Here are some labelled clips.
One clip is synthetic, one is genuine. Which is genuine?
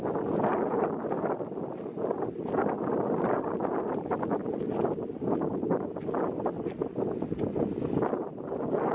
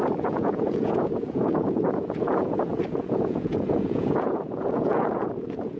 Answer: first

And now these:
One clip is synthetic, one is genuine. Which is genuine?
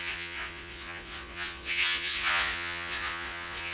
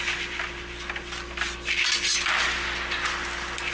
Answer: second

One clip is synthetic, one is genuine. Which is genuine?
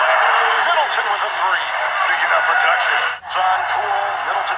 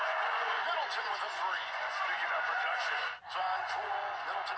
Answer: first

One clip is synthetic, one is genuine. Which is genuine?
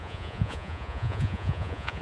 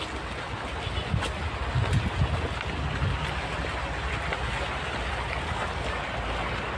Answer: second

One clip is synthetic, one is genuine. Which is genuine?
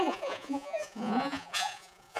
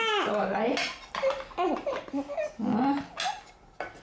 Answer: second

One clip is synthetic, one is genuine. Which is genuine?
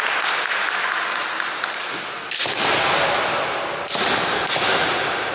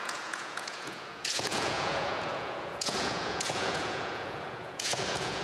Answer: first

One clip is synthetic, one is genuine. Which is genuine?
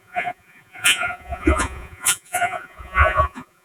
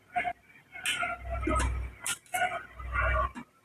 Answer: second